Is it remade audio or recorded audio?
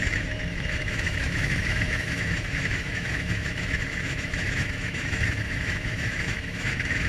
remade